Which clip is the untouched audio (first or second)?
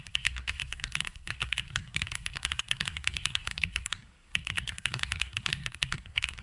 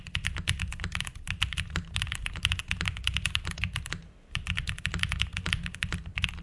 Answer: second